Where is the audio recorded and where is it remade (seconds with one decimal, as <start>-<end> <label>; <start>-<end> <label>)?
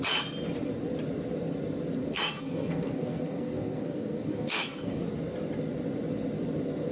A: 0.0-2.0 recorded; 2.0-5.0 remade; 5.0-6.9 recorded